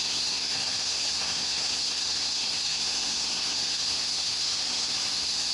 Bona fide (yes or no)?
no